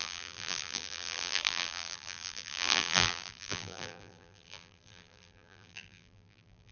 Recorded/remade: remade